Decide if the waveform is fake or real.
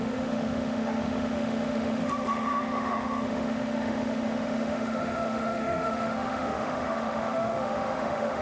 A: fake